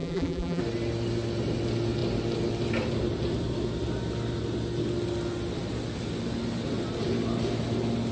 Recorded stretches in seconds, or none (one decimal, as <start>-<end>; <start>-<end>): 0.6-8.1